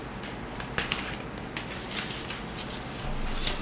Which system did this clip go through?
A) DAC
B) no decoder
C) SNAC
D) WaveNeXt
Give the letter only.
B